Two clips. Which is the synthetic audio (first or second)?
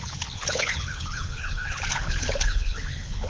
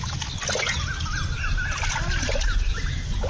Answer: first